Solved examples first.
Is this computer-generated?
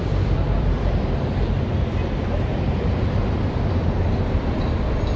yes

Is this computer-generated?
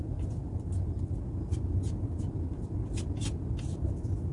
no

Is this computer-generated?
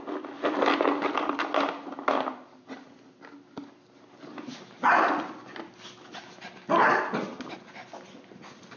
no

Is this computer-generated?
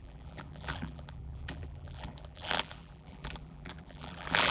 yes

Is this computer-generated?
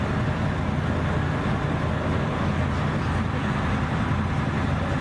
no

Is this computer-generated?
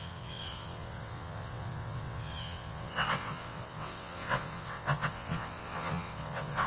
yes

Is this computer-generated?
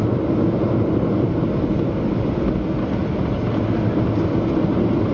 no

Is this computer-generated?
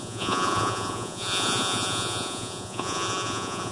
yes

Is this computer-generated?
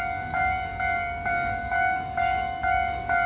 yes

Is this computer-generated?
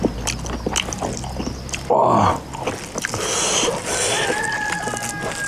no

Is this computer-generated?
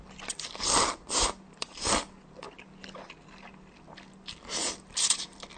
no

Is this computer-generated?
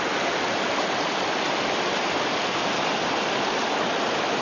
no